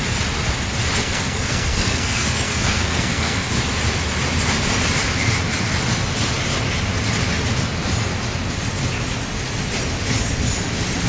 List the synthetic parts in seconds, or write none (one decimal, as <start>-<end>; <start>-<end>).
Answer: 1.0-3.5